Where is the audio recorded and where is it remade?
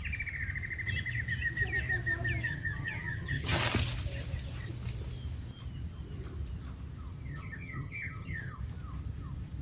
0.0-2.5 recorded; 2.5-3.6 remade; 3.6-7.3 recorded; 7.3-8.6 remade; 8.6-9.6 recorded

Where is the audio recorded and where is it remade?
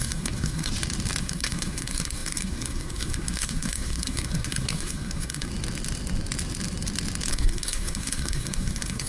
0.0-0.7 remade; 0.7-1.2 recorded; 1.2-5.5 remade; 5.5-7.3 recorded; 7.3-9.1 remade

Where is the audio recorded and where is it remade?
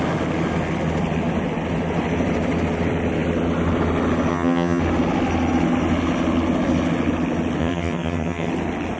0.0-4.3 recorded; 4.3-4.8 remade; 4.8-7.6 recorded; 7.6-8.5 remade; 8.5-9.0 recorded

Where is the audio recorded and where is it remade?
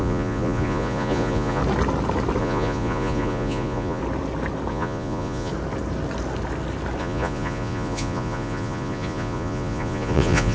0.0-1.6 remade; 1.6-2.4 recorded; 2.4-4.0 remade; 4.0-4.7 recorded; 4.7-5.5 remade; 5.5-7.0 recorded; 7.0-10.5 remade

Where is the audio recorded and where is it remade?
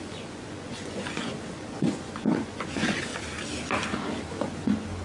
0.0-3.1 remade; 3.1-4.3 recorded; 4.3-5.0 remade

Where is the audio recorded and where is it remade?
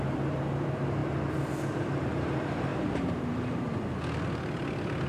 0.0-1.0 remade; 1.0-2.0 recorded; 2.0-3.7 remade; 3.7-5.1 recorded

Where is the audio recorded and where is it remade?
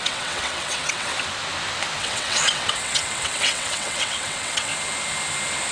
0.0-1.1 remade; 1.1-2.0 recorded; 2.0-4.7 remade; 4.7-5.7 recorded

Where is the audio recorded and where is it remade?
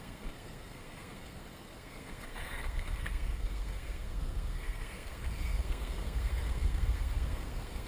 0.0-7.9 remade